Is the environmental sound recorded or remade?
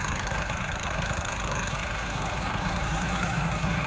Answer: remade